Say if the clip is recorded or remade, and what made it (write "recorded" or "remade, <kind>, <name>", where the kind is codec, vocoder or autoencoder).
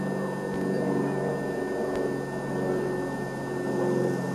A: recorded